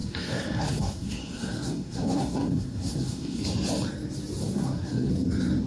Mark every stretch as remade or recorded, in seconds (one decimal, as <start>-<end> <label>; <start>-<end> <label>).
0.0-3.4 remade; 3.4-4.4 recorded; 4.4-5.1 remade; 5.1-5.7 recorded